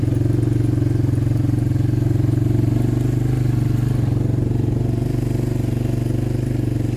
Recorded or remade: recorded